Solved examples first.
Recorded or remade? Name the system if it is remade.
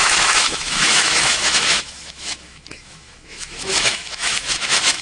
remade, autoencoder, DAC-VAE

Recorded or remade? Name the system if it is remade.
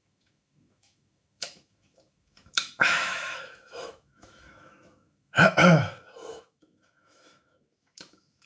remade, autoencoder, DAC-VAE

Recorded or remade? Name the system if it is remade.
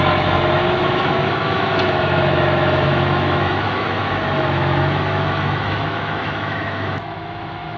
remade, autoencoder, DAC-VAE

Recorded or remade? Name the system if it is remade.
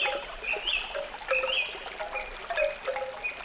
recorded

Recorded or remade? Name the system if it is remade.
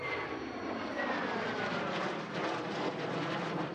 recorded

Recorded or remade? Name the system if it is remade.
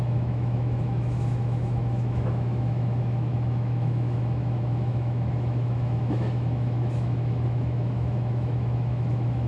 remade, autoencoder, DAC-VAE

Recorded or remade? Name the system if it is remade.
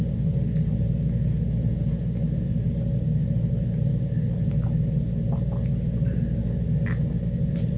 recorded